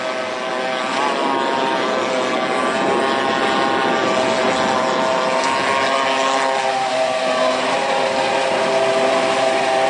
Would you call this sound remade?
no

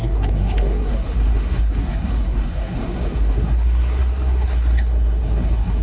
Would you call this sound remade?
yes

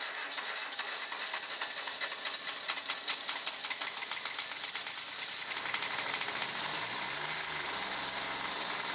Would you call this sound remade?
no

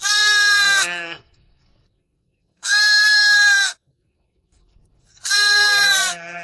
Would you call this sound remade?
yes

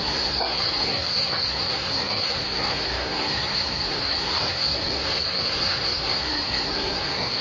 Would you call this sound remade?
yes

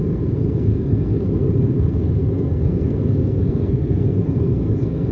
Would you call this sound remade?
yes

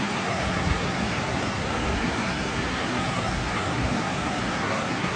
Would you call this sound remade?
yes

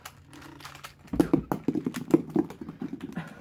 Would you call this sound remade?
no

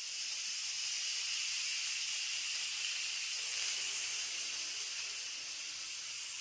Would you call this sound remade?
no